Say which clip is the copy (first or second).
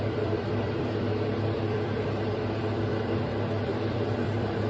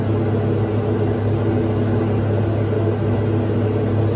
first